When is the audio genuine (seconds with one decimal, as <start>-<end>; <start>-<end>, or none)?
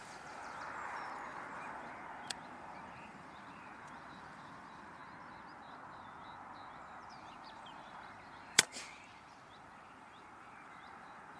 5.0-7.1